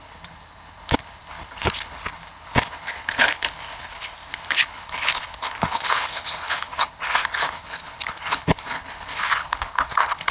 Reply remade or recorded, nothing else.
remade